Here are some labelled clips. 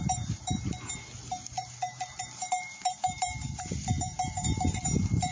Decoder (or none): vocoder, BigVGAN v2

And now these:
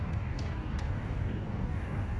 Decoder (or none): codec, DAC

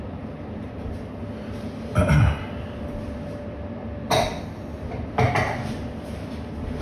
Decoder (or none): none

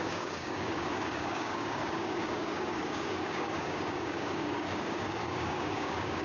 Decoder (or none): codec, DAC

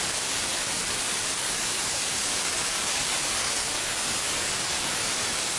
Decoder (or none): codec, DAC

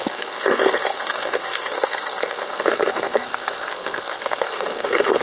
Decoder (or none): codec, SNAC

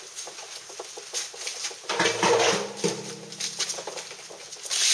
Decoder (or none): none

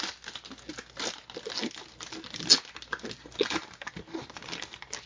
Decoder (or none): none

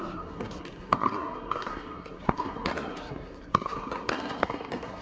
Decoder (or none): codec, SNAC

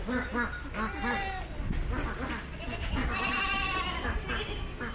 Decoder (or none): none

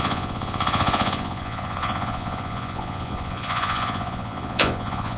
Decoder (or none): vocoder, Vocos